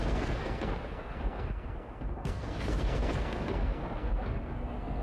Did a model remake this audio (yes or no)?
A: yes